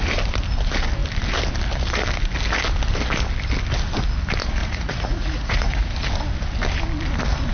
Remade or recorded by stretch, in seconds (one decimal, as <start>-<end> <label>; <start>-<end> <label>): 0.0-4.6 recorded; 4.6-5.9 remade; 5.9-7.5 recorded